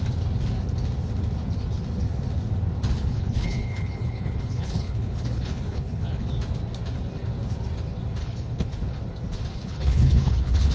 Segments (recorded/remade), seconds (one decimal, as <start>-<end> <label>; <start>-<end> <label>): 0.0-3.1 recorded; 3.1-6.3 remade; 6.3-8.2 recorded; 8.2-9.0 remade; 9.0-9.5 recorded; 9.5-10.7 remade